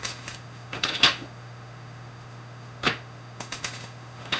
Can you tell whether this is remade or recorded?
remade